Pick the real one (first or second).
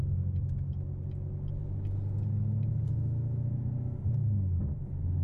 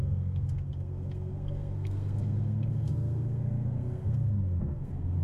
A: first